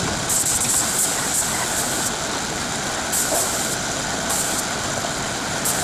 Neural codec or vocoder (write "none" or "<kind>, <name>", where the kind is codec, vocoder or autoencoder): none